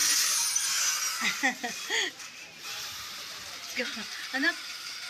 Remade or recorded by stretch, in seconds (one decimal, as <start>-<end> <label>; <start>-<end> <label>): 0.0-1.7 recorded; 1.7-5.1 remade